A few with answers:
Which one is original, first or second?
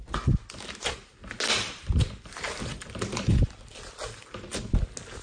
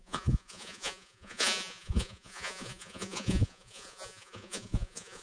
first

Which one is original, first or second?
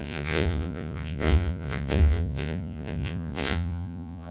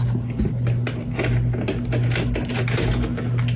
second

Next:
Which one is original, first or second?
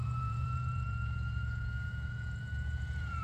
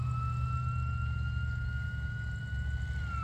second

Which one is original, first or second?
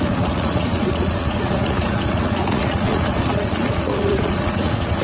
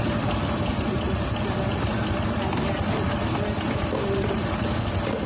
second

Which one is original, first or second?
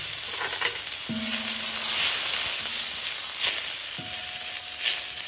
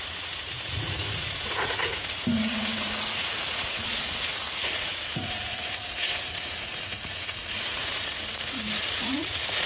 first